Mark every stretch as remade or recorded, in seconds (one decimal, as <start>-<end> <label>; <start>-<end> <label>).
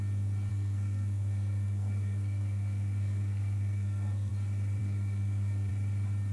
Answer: 0.0-0.5 recorded; 0.5-4.3 remade; 4.3-4.8 recorded; 4.8-5.7 remade; 5.7-6.3 recorded